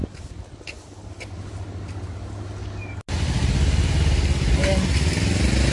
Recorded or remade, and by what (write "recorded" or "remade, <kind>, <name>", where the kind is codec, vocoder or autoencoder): recorded